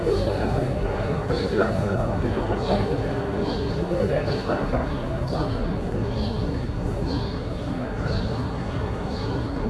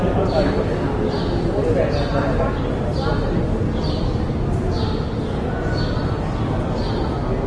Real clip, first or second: second